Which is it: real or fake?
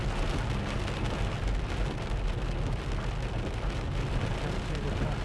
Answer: real